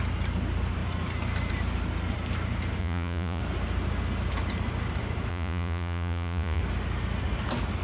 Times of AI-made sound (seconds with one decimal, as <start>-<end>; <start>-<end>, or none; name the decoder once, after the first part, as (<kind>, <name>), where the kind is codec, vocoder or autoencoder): 2.8-3.4 (vocoder, Vocos); 5.3-6.6